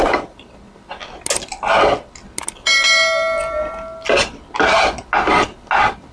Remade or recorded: recorded